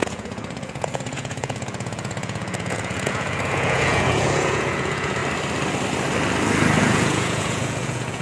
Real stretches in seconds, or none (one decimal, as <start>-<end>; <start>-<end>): 5.2-6.8